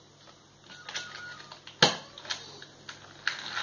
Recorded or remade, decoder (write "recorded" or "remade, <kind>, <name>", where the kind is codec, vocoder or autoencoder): recorded